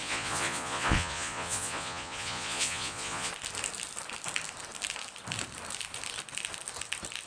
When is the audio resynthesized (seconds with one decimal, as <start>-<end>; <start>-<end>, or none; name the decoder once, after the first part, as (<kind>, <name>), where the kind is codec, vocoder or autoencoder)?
0.0-3.3 (vocoder, Vocos)